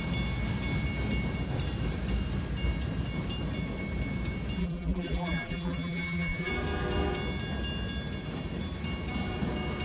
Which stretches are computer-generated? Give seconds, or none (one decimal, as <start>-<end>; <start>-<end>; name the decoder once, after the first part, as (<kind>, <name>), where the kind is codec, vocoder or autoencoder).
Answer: 4.6-6.5 (vocoder, BigVGAN v2)